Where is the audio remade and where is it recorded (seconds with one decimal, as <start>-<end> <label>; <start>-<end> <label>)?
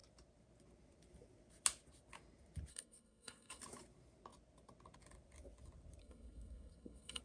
0.0-2.7 recorded; 2.7-3.6 remade; 3.6-6.0 recorded; 6.0-7.2 remade